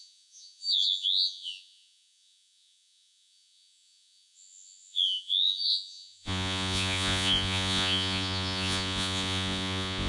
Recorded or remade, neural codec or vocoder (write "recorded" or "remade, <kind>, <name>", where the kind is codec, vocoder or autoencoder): remade, vocoder, Vocos